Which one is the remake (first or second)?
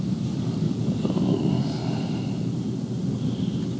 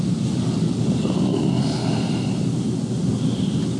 first